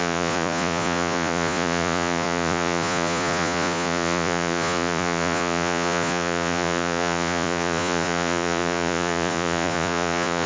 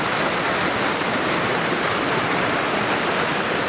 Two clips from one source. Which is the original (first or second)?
second